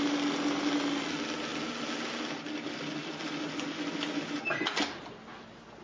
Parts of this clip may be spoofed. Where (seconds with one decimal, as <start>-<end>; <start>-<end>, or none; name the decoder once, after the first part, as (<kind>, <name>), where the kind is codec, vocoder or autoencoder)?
none